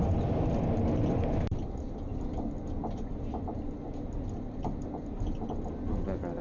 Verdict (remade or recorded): recorded